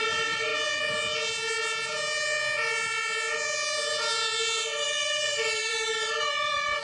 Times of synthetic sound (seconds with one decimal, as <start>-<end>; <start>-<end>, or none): 0.0-0.5; 4.6-6.8